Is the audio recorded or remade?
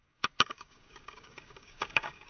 remade